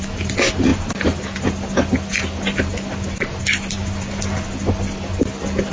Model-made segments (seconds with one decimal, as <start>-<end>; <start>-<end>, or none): none